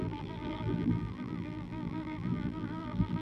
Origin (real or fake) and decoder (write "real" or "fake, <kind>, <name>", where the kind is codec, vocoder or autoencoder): fake, vocoder, BigVGAN v2